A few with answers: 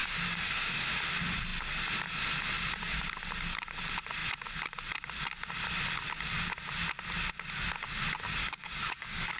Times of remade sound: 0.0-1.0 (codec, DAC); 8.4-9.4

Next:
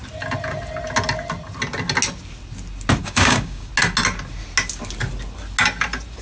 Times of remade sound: 3.0-3.7 (codec, DAC)

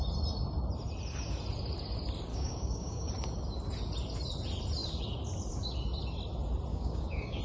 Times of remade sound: 2.3-3.1 (codec, DAC); 6.7-7.4

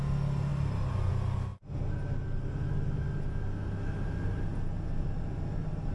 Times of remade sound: none

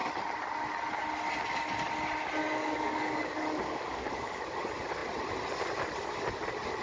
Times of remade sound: 2.4-4.4 (codec, DAC)

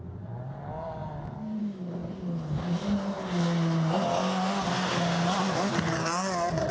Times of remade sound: none

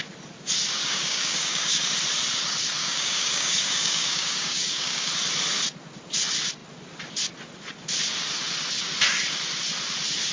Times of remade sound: 0.8-1.8 (codec, DAC); 2.8-5.1